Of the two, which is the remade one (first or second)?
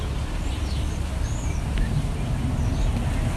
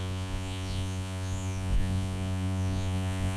second